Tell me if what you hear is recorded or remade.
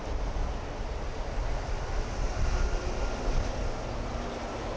recorded